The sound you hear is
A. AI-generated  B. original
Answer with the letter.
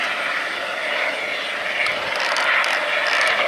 B